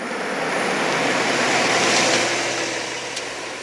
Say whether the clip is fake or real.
real